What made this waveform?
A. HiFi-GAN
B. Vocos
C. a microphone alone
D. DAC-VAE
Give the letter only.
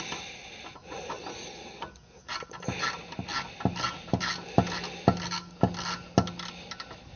C